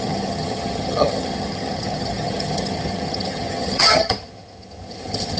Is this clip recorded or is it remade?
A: remade